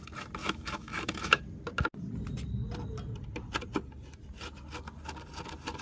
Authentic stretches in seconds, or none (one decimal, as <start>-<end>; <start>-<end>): 0.0-0.4; 1.4-5.8